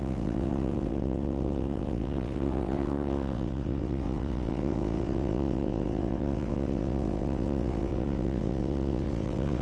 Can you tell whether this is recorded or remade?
remade